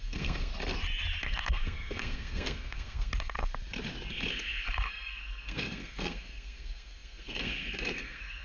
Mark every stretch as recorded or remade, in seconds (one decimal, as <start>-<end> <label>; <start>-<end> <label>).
0.0-0.5 remade; 0.5-1.2 recorded; 1.2-3.5 remade; 3.5-4.1 recorded; 4.1-8.4 remade